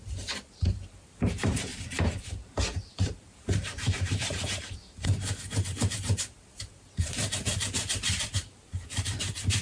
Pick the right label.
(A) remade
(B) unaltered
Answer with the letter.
A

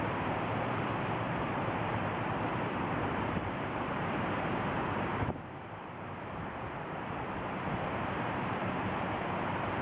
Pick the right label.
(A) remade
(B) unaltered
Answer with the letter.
A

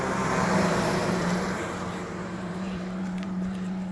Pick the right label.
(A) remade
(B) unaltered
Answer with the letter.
A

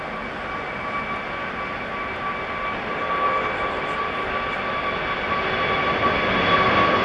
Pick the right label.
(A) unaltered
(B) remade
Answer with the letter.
A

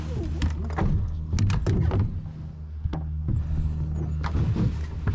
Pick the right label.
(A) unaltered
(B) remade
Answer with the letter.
A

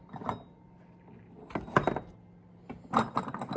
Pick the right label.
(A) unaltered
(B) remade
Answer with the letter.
A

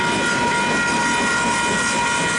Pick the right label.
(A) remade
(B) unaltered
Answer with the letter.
B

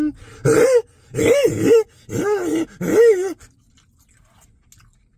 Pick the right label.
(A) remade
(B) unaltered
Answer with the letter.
B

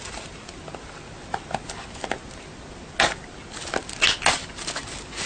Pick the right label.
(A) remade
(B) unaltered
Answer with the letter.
B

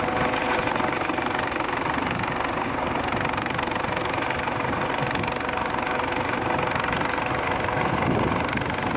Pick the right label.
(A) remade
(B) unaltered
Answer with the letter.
B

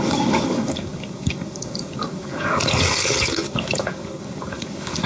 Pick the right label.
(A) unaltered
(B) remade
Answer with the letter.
B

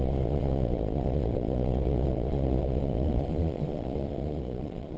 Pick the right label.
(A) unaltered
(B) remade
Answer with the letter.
B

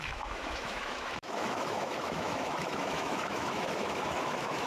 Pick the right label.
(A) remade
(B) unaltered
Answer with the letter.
A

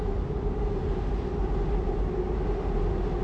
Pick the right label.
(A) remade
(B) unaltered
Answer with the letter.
B